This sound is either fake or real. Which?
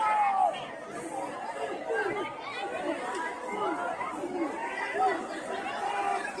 real